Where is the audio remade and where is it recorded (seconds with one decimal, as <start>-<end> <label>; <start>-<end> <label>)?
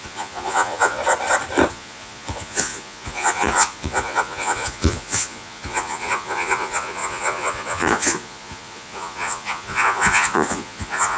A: 0.0-1.0 remade; 1.0-1.7 recorded; 1.7-11.2 remade